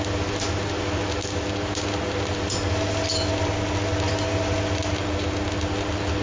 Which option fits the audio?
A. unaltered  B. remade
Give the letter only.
A